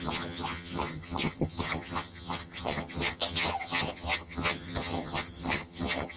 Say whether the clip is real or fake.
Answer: fake